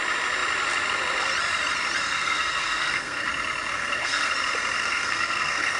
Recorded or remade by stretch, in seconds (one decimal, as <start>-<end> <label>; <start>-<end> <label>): 0.0-2.0 recorded; 2.0-3.3 remade; 3.3-3.7 recorded; 3.7-4.3 remade; 4.3-4.8 recorded; 4.8-5.8 remade